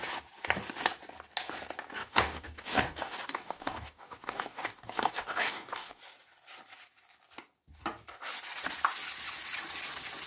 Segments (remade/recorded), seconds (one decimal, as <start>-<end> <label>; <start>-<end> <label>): 0.0-2.0 recorded; 2.0-6.0 remade; 6.0-10.3 recorded